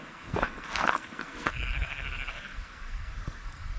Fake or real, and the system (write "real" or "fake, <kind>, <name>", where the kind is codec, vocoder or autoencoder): fake, codec, SNAC